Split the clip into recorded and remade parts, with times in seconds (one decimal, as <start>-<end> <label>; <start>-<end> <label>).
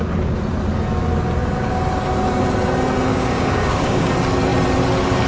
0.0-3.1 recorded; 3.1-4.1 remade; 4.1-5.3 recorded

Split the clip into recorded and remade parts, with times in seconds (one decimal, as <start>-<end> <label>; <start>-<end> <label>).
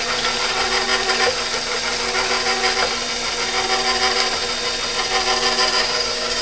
0.0-5.8 recorded; 5.8-6.4 remade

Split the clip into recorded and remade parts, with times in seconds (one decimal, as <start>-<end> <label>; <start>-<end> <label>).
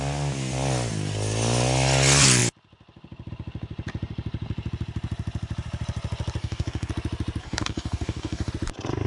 0.0-6.4 recorded; 6.4-6.9 remade; 6.9-7.4 recorded; 7.4-8.5 remade; 8.5-9.1 recorded